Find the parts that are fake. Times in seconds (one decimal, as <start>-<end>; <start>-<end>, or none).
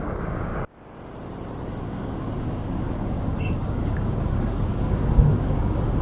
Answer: 0.0-0.5; 1.8-6.0